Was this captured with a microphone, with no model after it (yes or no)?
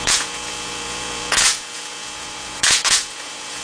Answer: no